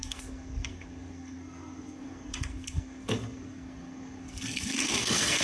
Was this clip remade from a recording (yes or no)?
yes